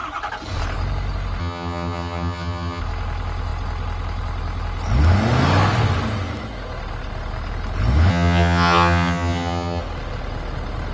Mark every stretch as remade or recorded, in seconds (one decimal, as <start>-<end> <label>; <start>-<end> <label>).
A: 0.0-1.4 recorded; 1.4-2.8 remade; 2.8-8.1 recorded; 8.1-9.8 remade; 9.8-10.9 recorded